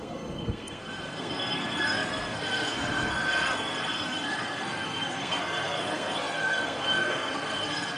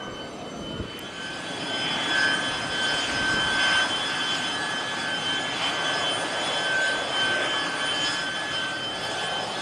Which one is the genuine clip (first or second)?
second